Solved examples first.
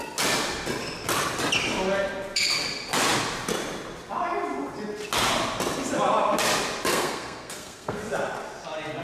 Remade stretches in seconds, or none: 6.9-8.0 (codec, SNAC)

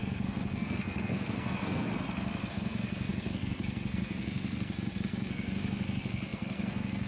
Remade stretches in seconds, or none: 0.0-1.9 (codec, SNAC); 2.5-7.1

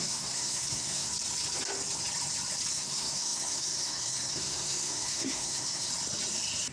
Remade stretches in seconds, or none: 0.0-1.1 (codec, SNAC); 2.7-5.9

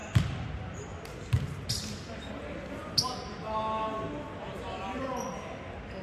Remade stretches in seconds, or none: none

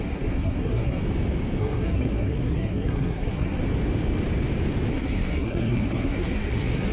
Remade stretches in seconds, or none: 0.0-1.0 (codec, SNAC); 1.6-3.6; 4.9-6.9

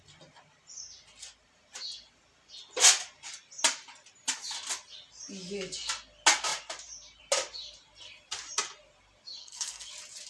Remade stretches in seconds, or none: 9.4-9.9 (codec, SNAC)

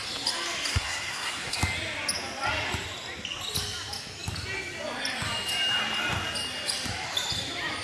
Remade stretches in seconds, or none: 0.7-1.6 (codec, SNAC)

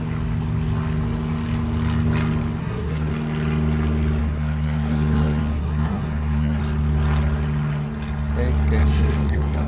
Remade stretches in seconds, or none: 2.6-3.1 (codec, SNAC); 4.2-6.6; 8.8-9.7